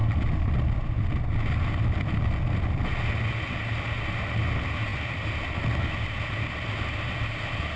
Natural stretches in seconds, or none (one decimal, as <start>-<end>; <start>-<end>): 0.0-7.8